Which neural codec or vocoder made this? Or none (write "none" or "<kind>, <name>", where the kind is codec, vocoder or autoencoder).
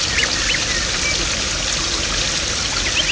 none